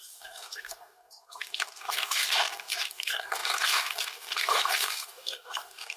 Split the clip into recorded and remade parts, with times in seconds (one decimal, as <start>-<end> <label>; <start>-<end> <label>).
0.0-6.0 remade